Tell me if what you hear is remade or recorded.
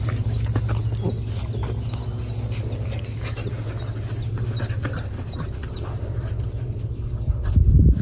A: recorded